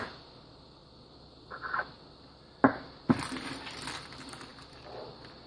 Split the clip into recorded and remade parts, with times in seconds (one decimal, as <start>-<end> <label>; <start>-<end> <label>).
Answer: 0.0-5.5 recorded